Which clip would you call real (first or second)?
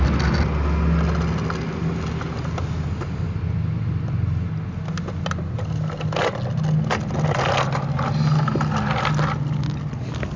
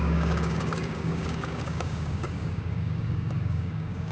first